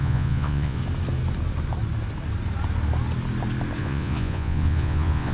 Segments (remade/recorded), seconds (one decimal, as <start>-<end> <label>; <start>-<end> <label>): 0.0-0.8 remade; 0.8-3.8 recorded; 3.8-5.3 remade